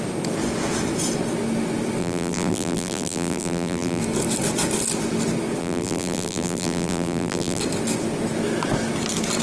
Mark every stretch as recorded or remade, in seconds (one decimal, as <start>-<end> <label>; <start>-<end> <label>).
0.0-2.0 recorded; 2.0-4.0 remade; 4.0-5.6 recorded; 5.6-7.6 remade; 7.6-9.4 recorded